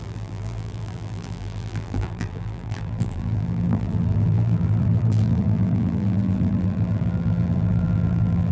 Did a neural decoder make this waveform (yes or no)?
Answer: yes